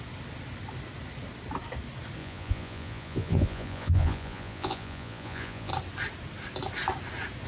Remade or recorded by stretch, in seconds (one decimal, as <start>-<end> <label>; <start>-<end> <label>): 0.0-2.2 recorded; 2.2-5.7 remade; 5.7-7.5 recorded